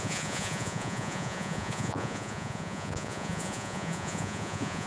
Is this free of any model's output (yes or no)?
no